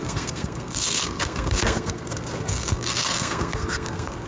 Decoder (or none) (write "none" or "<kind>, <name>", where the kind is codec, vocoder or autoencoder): codec, SNAC